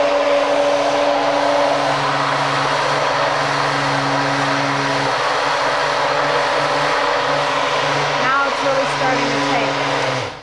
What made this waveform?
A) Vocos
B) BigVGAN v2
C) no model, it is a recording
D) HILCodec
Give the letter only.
C